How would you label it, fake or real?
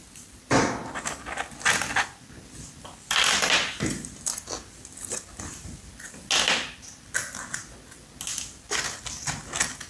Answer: real